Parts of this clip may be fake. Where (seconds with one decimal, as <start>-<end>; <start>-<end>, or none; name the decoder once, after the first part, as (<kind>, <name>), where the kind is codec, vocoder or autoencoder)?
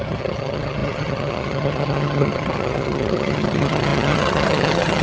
0.0-5.0 (vocoder, HiFi-GAN)